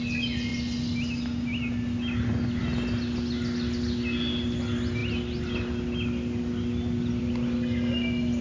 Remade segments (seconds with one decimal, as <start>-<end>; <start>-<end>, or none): none